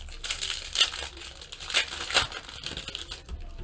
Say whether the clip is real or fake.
real